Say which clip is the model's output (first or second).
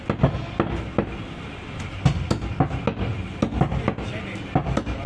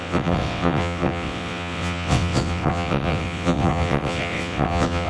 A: second